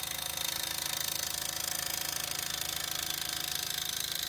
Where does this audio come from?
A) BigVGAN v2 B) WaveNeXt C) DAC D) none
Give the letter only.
D